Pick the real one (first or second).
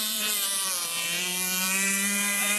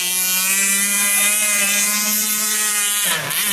second